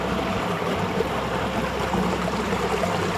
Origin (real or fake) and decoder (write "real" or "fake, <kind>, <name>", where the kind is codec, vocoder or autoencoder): real